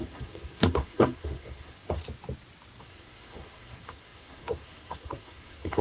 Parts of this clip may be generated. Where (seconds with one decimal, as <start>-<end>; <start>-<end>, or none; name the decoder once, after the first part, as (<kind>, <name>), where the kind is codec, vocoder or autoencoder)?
0.0-2.0 (codec, SNAC); 2.8-5.8

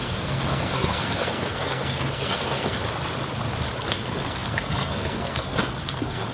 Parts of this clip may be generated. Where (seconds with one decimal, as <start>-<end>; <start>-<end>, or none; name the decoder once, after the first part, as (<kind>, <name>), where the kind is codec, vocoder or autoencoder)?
0.0-2.8 (codec, SNAC); 3.9-6.3